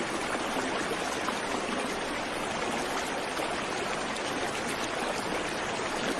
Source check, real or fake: real